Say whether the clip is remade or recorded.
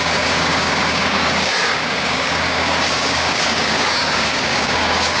remade